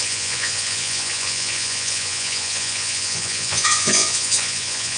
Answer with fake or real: fake